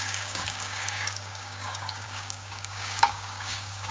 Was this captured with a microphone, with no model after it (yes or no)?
no